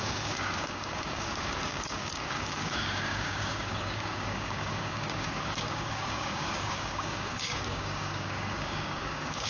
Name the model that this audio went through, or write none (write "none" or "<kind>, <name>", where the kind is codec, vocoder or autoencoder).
codec, DAC